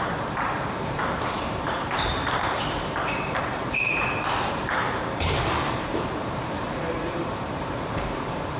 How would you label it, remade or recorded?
remade